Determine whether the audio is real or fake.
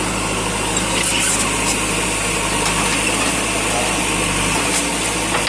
real